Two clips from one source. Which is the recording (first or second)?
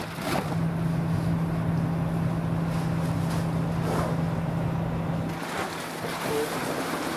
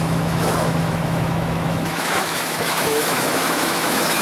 first